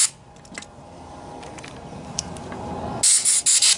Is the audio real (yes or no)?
yes